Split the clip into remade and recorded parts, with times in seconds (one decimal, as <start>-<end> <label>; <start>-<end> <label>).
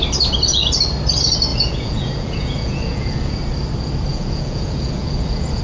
0.0-1.5 recorded; 1.5-3.3 remade; 3.3-4.1 recorded; 4.1-5.6 remade